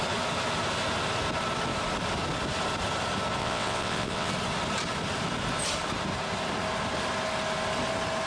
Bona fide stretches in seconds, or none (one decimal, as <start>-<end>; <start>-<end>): 0.0-3.4; 4.3-8.3